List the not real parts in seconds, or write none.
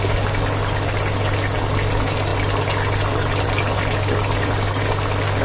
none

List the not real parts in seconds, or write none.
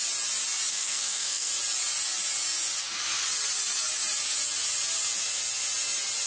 0.7-1.5 (codec, SNAC)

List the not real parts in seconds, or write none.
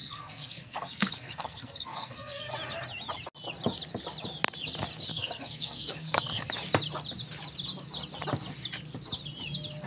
0.0-2.5 (codec, SNAC); 5.1-6.5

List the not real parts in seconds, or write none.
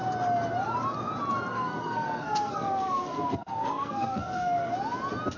1.5-4.7 (codec, SNAC)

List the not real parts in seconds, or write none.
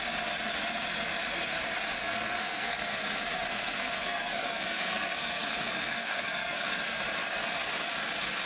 2.0-3.0 (codec, SNAC); 3.5-7.0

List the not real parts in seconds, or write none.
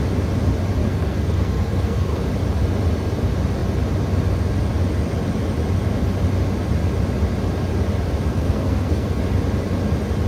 0.8-2.2 (codec, SNAC); 8.3-9.2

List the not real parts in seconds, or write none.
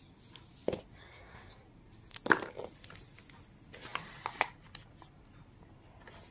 1.0-1.5 (codec, SNAC)